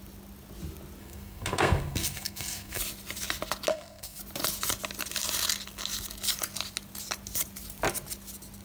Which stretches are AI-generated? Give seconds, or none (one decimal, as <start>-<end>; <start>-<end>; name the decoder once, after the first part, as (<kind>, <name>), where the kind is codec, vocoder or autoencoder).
1.0-2.8 (codec, SNAC); 3.7-4.2